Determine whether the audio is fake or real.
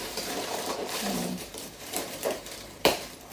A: fake